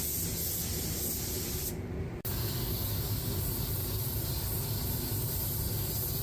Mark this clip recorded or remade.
recorded